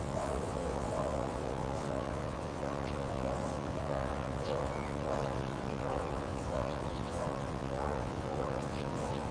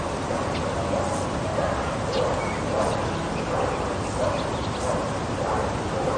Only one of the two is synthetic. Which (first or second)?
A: first